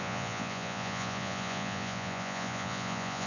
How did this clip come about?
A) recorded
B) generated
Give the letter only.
B